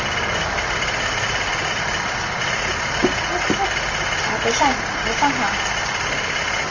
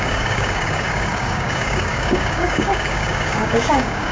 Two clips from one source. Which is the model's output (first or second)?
second